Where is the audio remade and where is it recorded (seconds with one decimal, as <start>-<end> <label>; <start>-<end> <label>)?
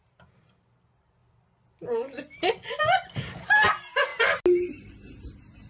0.0-1.2 remade; 1.2-2.8 recorded; 2.8-4.1 remade; 4.1-4.7 recorded; 4.7-5.7 remade